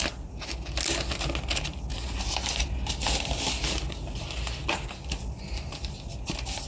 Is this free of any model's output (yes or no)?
yes